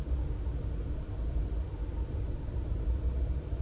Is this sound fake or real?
real